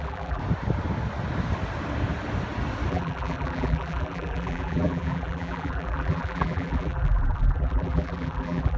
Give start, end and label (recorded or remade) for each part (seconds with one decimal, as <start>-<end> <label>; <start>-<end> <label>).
0.0-0.4 remade; 0.4-2.9 recorded; 2.9-8.8 remade